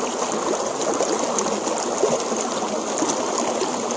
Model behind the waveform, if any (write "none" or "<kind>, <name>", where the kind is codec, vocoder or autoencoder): none